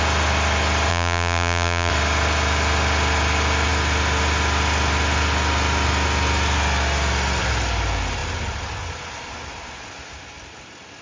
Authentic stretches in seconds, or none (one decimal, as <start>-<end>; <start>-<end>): 0.0-0.9; 1.9-11.0